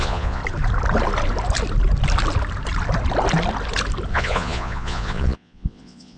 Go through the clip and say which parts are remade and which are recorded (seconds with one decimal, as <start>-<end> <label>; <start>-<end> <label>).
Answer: 0.0-0.4 remade; 0.4-4.1 recorded; 4.1-6.2 remade